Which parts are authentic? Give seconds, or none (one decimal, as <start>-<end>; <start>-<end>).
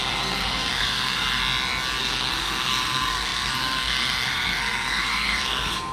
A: 1.4-2.0